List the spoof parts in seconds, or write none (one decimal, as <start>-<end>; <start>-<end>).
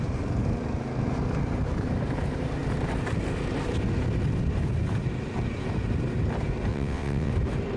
6.7-7.3